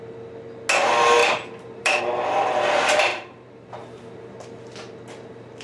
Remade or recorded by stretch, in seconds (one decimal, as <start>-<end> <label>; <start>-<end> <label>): 0.0-1.2 recorded; 1.2-2.0 remade; 2.0-3.1 recorded; 3.1-3.7 remade; 3.7-5.6 recorded